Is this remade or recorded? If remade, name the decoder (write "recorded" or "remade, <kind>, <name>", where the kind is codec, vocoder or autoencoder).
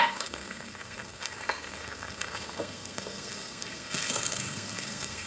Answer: remade, codec, SNAC